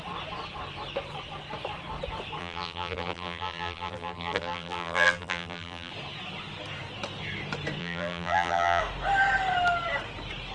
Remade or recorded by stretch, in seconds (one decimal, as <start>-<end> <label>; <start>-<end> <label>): 0.0-2.4 recorded; 2.4-5.9 remade; 5.9-7.8 recorded; 7.8-8.8 remade; 8.8-10.5 recorded